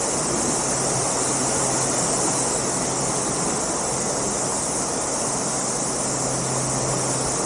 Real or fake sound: real